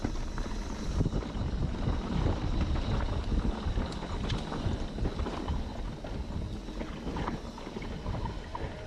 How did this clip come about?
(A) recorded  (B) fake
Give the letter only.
A